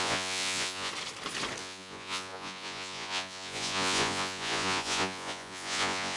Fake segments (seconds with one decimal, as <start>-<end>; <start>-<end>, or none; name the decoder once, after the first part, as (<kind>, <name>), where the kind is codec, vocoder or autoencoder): 0.0-0.9 (vocoder, Vocos); 1.6-6.2